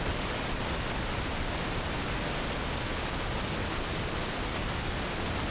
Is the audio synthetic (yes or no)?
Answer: no